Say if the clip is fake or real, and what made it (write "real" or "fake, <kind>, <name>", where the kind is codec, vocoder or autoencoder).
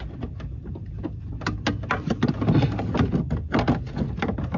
real